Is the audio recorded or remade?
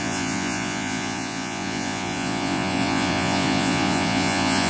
remade